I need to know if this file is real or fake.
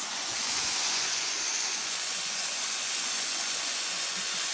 fake